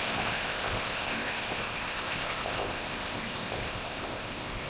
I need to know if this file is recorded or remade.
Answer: remade